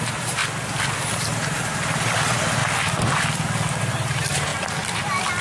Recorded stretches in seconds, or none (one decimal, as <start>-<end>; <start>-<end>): 0.4-1.0; 2.6-3.8; 4.5-5.4